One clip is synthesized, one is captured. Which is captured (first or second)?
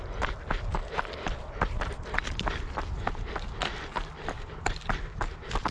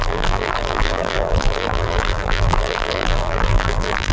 first